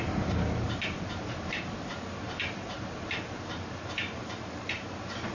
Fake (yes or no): yes